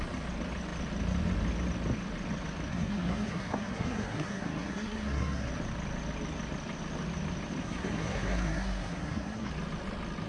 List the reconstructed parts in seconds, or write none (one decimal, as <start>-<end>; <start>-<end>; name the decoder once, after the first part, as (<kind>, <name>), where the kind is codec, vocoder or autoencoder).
2.7-5.5 (codec, SNAC); 7.6-9.5